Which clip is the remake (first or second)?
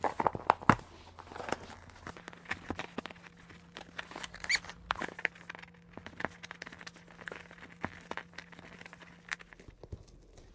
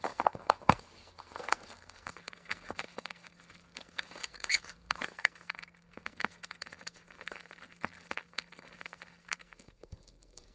second